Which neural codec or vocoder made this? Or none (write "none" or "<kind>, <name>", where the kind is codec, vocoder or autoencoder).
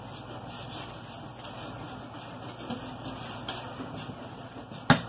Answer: none